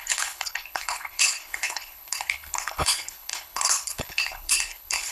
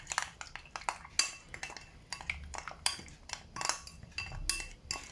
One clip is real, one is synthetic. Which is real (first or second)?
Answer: second